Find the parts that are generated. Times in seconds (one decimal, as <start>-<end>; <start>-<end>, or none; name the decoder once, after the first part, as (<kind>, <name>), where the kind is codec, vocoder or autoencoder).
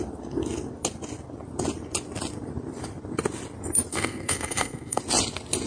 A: 3.9-5.0 (codec, SNAC)